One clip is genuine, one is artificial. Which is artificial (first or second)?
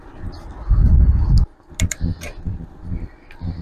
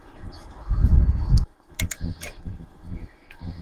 second